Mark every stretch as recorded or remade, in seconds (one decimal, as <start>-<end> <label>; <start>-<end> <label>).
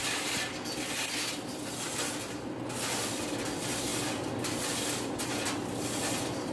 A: 0.0-6.5 recorded